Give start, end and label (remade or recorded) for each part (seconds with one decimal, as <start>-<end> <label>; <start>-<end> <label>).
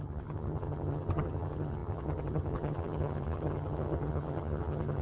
0.0-5.0 remade